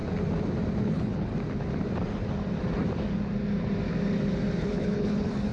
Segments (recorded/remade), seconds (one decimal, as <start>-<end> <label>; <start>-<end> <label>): 0.0-0.8 recorded; 0.8-1.3 remade; 1.3-4.6 recorded; 4.6-5.5 remade